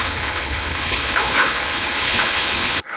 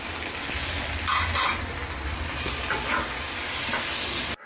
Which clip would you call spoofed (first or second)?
first